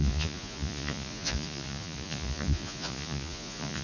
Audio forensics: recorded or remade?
remade